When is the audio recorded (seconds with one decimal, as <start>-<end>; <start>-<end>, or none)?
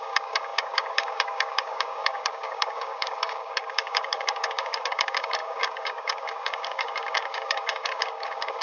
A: none